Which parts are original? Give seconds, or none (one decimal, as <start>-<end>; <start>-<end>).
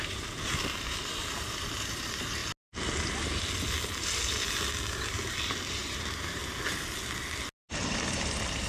2.4-5.8; 6.4-7.7